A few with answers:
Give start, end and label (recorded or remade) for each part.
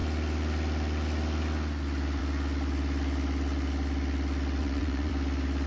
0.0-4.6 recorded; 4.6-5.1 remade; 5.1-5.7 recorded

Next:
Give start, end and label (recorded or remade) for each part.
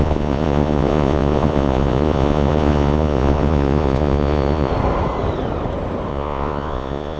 0.0-4.7 remade; 4.7-6.1 recorded; 6.1-7.2 remade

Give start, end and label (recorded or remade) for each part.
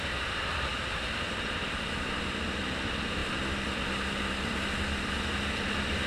0.0-3.2 remade; 3.2-5.4 recorded; 5.4-6.1 remade